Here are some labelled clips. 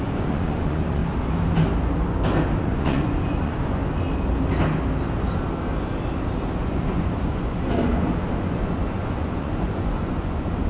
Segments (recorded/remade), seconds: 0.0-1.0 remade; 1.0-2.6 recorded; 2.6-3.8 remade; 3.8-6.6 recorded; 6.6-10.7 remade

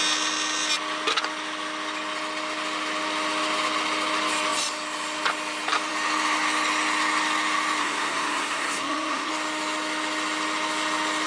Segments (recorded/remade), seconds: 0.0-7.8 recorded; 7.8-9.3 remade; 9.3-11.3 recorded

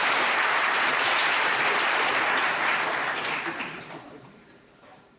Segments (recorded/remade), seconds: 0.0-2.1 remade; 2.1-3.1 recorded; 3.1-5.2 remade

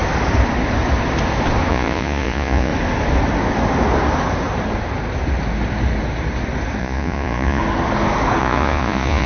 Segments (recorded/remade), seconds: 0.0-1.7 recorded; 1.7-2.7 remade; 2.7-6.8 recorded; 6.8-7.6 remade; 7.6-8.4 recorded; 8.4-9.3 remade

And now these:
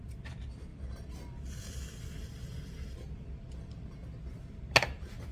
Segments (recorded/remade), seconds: 0.0-5.3 recorded